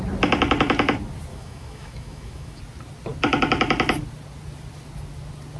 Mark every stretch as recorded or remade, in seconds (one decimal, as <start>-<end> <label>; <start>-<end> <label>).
0.0-1.3 recorded; 1.3-2.6 remade; 2.6-5.6 recorded